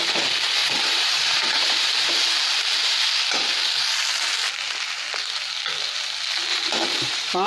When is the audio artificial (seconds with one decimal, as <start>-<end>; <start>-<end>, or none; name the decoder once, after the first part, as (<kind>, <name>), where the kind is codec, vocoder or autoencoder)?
0.6-3.2 (vocoder, BigVGAN v2); 6.5-7.5